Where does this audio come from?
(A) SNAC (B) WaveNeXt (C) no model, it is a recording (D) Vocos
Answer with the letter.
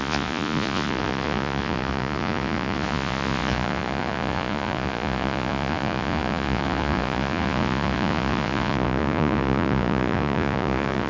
D